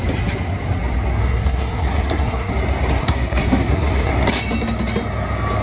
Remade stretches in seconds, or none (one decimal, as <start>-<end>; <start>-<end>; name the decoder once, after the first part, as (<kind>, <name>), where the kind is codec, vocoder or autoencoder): 1.2-2.5 (codec, SNAC); 3.0-4.1